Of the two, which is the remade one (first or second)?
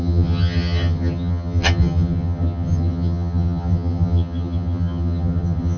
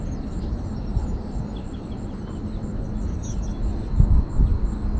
first